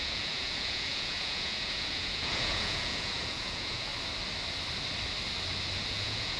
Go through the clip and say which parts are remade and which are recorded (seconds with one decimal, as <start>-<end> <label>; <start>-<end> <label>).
0.0-3.9 remade; 3.9-5.9 recorded; 5.9-6.4 remade